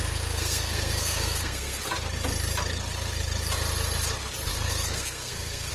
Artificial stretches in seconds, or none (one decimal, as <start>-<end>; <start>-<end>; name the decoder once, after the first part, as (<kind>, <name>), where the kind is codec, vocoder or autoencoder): 0.0-1.8 (codec, SNAC); 4.5-5.7